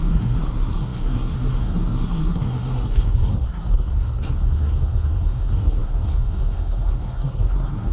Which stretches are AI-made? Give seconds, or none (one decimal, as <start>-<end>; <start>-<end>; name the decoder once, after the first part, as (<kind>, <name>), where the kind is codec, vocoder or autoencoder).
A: 0.0-7.9 (codec, SNAC)